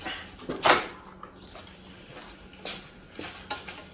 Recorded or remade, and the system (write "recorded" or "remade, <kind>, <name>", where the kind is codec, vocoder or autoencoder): recorded